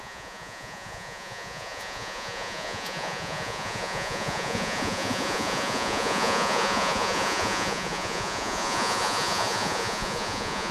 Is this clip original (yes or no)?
no